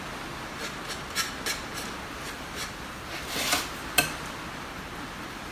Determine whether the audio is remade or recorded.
recorded